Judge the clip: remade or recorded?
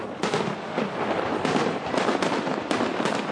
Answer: recorded